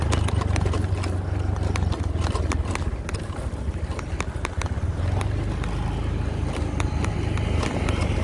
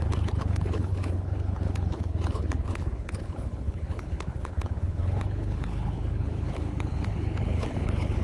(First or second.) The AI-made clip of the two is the second